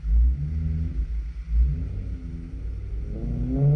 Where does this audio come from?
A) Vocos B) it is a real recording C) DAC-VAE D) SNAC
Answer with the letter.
B